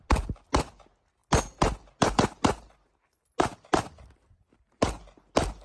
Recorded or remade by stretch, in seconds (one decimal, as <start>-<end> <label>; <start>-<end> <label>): 0.0-5.6 recorded